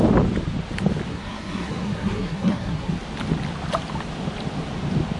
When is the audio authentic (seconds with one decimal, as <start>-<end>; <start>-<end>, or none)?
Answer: 0.0-1.1; 2.9-5.2